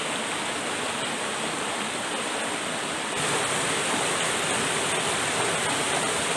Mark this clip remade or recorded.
recorded